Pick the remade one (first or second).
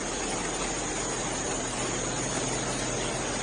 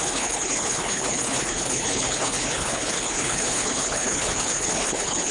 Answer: second